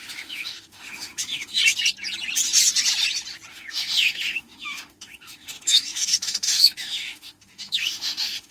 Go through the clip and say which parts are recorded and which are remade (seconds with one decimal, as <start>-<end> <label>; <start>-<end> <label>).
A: 0.0-1.6 remade; 1.6-3.5 recorded; 3.5-8.5 remade